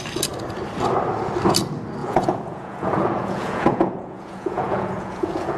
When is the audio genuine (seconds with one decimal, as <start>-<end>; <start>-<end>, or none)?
0.0-2.0